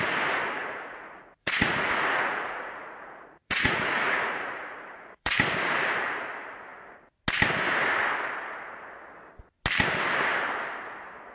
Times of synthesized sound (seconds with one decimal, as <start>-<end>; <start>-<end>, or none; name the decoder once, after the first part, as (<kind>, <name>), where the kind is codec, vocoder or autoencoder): 0.6-5.3 (vocoder, Vocos)